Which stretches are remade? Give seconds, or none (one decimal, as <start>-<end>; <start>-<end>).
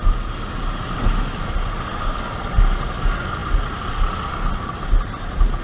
none